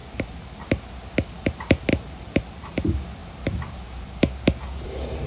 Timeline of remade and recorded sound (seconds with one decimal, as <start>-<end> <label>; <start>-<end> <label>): 0.0-0.6 remade; 0.6-1.9 recorded; 1.9-2.7 remade; 2.7-3.2 recorded; 3.2-5.3 remade